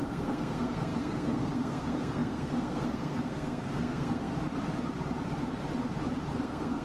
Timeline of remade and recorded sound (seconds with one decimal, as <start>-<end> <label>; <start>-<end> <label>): 0.0-4.3 remade; 4.3-6.3 recorded; 6.3-6.8 remade